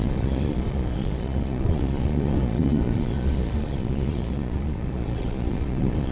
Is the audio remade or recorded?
remade